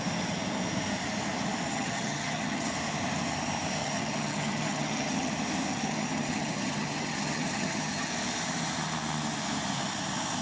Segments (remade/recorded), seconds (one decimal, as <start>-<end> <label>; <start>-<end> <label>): 0.0-1.7 recorded; 1.7-2.7 remade; 2.7-3.8 recorded; 3.8-5.3 remade; 5.3-5.7 recorded; 5.7-8.1 remade; 8.1-10.4 recorded